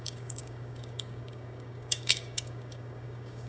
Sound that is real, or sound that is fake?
fake